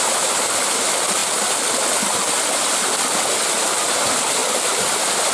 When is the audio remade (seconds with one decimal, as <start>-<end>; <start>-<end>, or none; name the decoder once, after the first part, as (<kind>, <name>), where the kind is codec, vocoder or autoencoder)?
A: none